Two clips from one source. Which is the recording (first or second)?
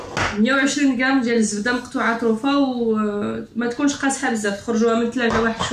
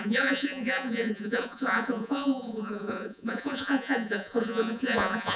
first